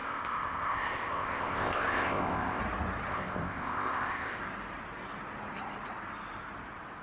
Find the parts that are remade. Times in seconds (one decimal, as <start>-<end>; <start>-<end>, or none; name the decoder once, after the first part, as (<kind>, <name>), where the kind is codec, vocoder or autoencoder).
0.0-2.6 (codec, ZipCodec); 3.1-4.4